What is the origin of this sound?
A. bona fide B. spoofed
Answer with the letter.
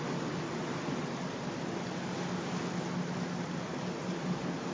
A